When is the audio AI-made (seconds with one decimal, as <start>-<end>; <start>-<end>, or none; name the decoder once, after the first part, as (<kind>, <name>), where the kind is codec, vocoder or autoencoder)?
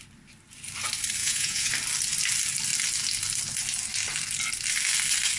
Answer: 1.2-1.7 (vocoder, Vocos)